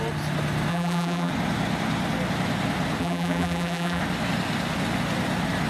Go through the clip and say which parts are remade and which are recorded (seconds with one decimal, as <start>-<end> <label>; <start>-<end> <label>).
0.0-0.7 recorded; 0.7-1.3 remade; 1.3-3.0 recorded; 3.0-4.0 remade; 4.0-5.7 recorded